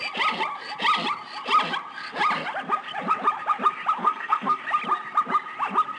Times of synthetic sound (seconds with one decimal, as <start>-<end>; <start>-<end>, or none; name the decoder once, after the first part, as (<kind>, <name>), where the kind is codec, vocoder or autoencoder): 4.0-4.6 (codec, SNAC)